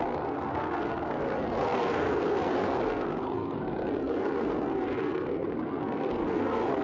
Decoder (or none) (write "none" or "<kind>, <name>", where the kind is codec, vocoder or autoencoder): codec, SNAC